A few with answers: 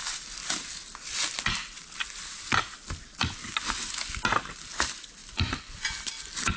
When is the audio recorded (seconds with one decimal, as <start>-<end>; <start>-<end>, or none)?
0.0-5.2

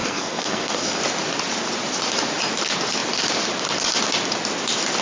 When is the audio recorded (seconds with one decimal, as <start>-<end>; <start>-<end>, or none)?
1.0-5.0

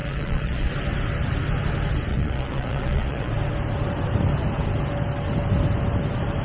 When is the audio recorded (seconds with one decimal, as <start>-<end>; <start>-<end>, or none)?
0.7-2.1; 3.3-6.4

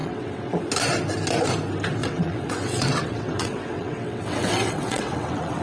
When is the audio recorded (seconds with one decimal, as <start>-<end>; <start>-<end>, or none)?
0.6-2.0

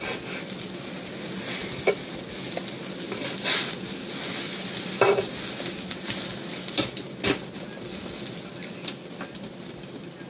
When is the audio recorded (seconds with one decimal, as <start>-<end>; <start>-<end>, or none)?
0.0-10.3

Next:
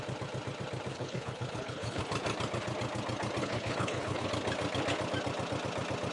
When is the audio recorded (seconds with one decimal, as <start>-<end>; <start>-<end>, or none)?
0.0-0.9; 2.0-3.4; 4.3-6.1

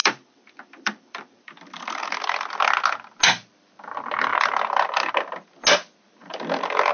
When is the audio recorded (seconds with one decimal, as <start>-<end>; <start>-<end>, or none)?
2.6-4.3; 5.1-6.2